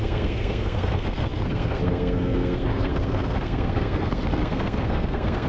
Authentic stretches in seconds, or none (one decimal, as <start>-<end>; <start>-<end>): none